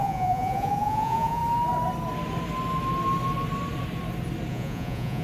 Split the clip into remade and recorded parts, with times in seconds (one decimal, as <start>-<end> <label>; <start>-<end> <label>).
0.0-1.4 remade; 1.4-4.5 recorded; 4.5-5.2 remade